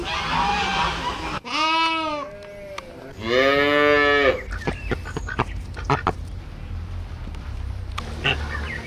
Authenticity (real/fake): real